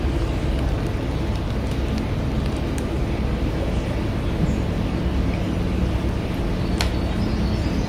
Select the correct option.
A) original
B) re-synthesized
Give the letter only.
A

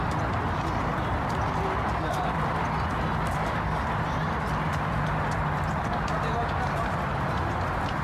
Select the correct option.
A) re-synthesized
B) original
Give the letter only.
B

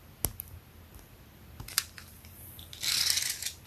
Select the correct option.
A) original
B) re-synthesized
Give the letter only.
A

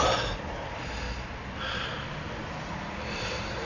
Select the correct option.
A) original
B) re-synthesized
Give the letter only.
A